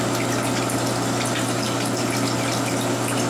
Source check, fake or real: real